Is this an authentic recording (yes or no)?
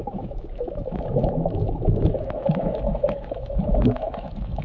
no